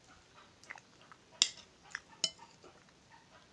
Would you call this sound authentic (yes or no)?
yes